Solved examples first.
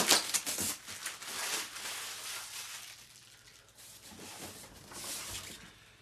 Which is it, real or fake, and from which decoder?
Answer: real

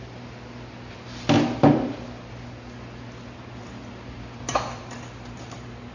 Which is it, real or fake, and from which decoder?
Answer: real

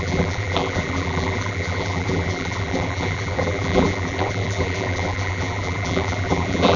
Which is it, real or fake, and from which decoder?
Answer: fake, vocoder, BigVGAN v2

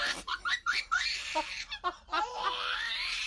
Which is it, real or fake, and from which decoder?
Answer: fake, vocoder, BigVGAN v2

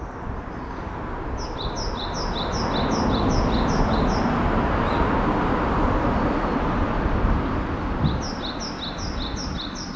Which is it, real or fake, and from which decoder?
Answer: real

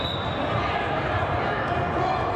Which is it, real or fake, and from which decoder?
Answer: real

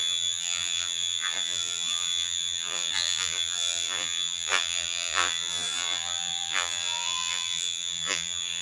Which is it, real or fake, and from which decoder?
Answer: fake, vocoder, BigVGAN v2